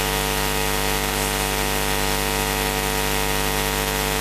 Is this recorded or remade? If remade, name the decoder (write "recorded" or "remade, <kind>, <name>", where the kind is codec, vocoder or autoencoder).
recorded